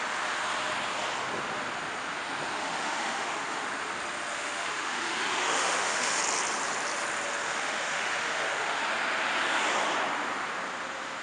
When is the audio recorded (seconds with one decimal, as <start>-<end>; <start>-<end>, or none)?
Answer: 0.0-2.6; 3.7-4.3; 6.2-7.4; 8.8-11.2